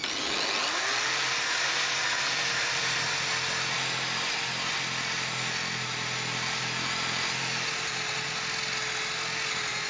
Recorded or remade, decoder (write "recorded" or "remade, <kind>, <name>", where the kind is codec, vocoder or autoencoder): recorded